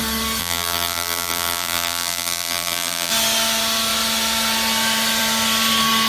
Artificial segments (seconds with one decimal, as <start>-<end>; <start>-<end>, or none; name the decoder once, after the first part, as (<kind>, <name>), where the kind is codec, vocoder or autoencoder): 0.4-3.1 (vocoder, BigVGAN v2)